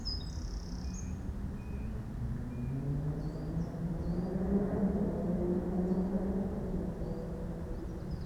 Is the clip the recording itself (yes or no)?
yes